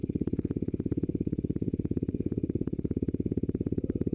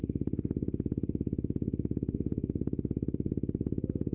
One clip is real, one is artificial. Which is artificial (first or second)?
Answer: first